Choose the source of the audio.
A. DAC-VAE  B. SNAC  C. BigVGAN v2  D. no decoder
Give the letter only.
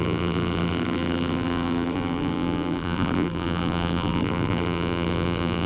C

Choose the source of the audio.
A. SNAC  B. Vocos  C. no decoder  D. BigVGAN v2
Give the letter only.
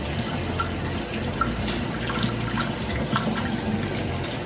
C